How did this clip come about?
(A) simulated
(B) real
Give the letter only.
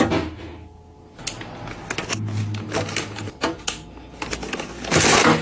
B